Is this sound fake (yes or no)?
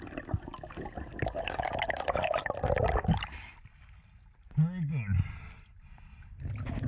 no